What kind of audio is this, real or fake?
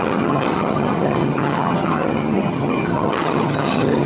fake